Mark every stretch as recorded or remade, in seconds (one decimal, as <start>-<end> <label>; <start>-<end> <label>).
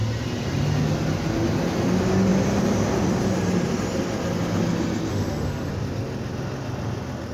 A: 0.0-5.1 recorded; 5.1-5.7 remade; 5.7-7.3 recorded